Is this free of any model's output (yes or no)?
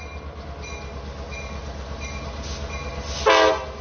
yes